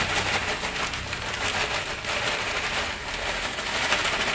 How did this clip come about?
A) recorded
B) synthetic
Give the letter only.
A